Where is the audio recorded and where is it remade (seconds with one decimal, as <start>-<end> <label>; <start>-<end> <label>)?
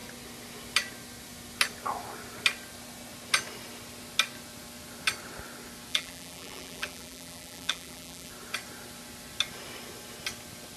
0.0-5.9 recorded; 5.9-8.3 remade; 8.3-10.8 recorded